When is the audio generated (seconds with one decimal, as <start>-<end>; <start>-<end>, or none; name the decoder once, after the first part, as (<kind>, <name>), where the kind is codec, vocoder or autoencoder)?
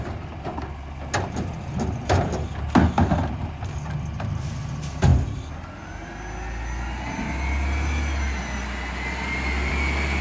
none